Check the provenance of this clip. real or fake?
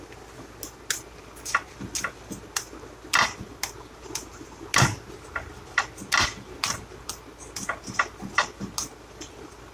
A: real